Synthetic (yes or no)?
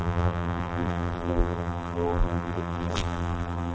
yes